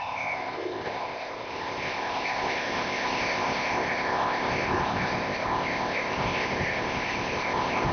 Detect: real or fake fake